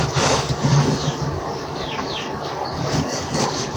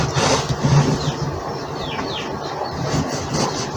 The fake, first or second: first